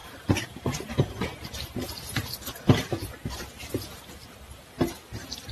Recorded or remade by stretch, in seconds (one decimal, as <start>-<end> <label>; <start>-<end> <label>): 0.0-5.5 recorded